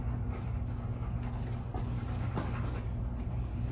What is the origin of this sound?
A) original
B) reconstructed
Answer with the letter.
B